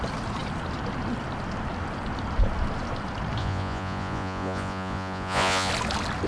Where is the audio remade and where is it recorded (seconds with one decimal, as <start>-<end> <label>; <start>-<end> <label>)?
0.0-3.4 recorded; 3.4-5.7 remade; 5.7-6.3 recorded